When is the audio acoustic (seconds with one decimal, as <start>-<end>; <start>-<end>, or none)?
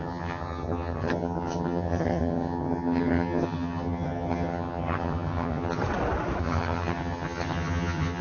5.8-6.4